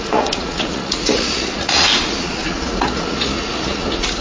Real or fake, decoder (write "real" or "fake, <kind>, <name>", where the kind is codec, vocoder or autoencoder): fake, vocoder, Vocos